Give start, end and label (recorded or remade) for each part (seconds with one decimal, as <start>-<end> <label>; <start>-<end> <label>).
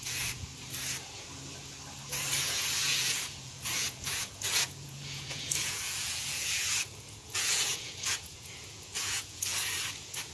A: 0.0-0.5 remade; 0.5-2.4 recorded; 2.4-10.3 remade